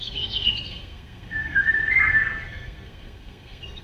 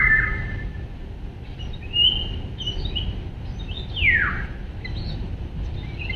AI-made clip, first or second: first